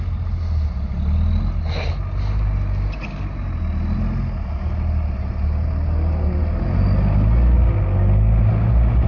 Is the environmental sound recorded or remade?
recorded